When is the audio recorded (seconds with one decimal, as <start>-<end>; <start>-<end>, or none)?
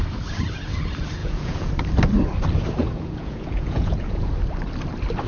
0.0-1.2; 1.7-2.8; 4.3-5.3